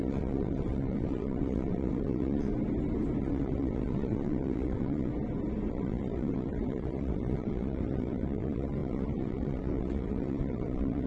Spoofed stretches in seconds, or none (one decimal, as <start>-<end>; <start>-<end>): 0.0-2.5; 3.2-5.1; 5.7-11.1